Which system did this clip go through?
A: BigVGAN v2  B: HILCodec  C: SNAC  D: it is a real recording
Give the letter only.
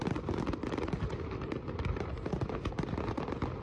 D